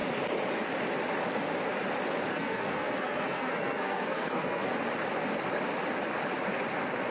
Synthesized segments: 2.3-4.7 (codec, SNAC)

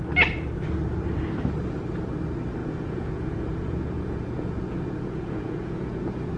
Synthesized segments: 2.6-6.4 (vocoder, Vocos)

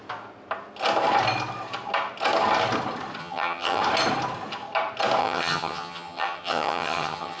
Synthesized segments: 3.2-3.8 (vocoder, HiFi-GAN); 5.2-7.4